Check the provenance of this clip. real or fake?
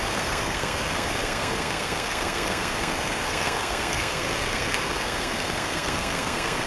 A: fake